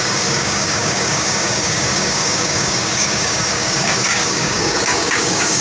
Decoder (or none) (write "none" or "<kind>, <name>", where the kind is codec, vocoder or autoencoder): codec, DAC